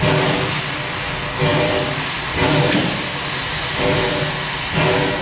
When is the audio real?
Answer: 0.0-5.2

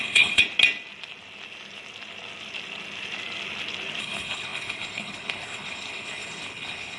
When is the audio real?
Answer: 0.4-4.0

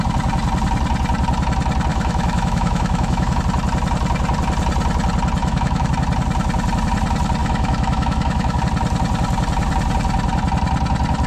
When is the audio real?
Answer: 0.0-1.9; 3.4-5.4; 5.9-7.4; 8.6-11.3